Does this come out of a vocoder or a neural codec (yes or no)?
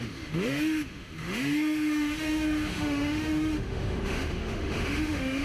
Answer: yes